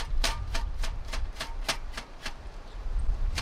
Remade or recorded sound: remade